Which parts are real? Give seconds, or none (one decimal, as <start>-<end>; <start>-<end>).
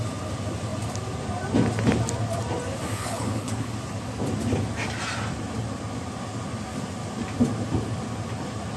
0.0-3.0; 3.7-8.8